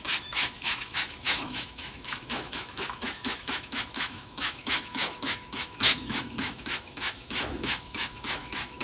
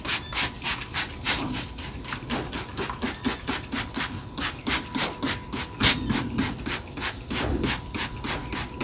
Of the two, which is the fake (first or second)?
first